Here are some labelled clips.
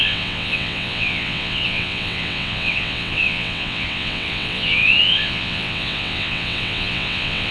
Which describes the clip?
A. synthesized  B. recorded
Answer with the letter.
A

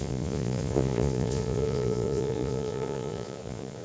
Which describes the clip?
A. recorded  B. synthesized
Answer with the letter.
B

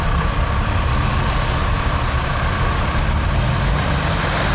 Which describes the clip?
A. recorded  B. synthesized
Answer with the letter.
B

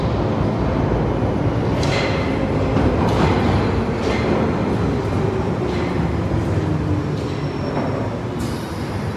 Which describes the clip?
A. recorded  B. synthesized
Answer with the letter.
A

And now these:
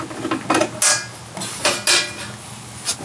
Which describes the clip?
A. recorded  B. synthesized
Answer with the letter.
A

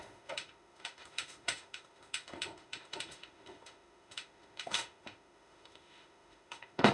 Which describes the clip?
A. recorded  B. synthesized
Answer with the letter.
B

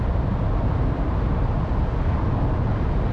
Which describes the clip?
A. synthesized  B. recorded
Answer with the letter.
B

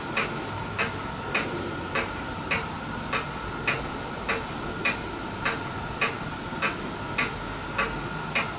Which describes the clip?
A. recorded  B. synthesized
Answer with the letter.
A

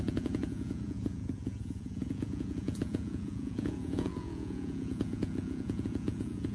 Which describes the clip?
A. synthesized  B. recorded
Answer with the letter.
A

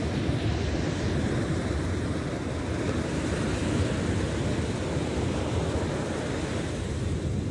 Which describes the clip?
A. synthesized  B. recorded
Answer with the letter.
B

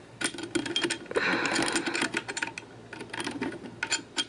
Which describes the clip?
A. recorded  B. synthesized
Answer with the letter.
A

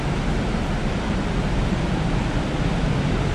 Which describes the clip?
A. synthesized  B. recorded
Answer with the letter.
B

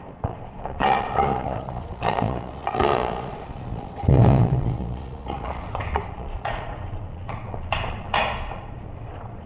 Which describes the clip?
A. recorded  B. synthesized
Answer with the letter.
B